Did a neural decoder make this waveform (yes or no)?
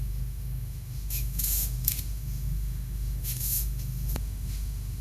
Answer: yes